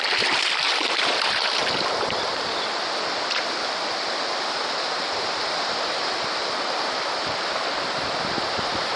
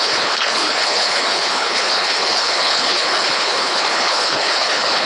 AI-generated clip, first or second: second